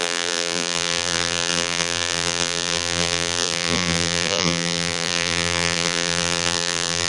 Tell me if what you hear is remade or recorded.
remade